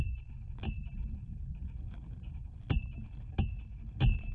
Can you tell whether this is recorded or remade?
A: recorded